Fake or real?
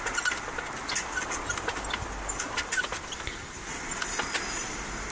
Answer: real